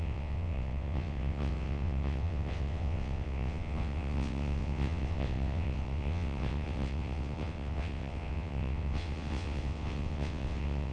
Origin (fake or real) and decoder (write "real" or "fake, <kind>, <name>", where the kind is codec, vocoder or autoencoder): fake, vocoder, WaveNeXt